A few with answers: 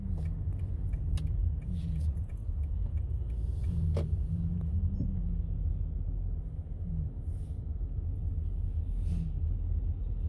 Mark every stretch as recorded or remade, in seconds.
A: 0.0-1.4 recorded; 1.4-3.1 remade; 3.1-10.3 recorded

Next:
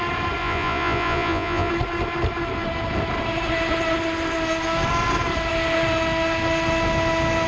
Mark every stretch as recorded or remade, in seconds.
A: 0.0-0.4 recorded; 0.4-1.7 remade; 1.7-7.5 recorded

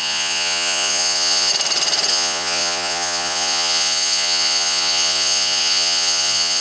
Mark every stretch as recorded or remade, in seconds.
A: 0.0-1.5 remade; 1.5-2.1 recorded; 2.1-6.6 remade

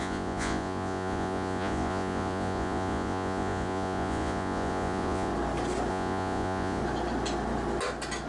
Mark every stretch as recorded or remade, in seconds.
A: 0.0-5.3 remade; 5.3-5.9 recorded; 5.9-6.8 remade; 6.8-8.3 recorded

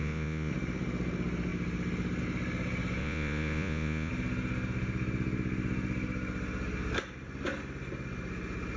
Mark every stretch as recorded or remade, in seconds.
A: 0.0-0.5 remade; 0.5-3.0 recorded; 3.0-4.1 remade; 4.1-8.8 recorded

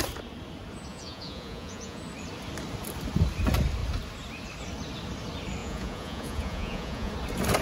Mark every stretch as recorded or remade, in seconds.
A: 0.0-0.9 recorded; 0.9-2.0 remade; 2.0-5.6 recorded; 5.6-7.1 remade; 7.1-7.6 recorded

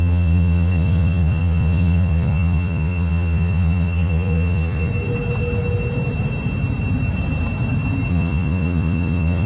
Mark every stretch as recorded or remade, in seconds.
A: 0.0-4.9 remade; 4.9-8.1 recorded; 8.1-9.5 remade

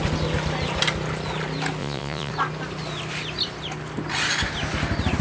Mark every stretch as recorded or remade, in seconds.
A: 0.0-1.8 recorded; 1.8-2.3 remade; 2.3-5.2 recorded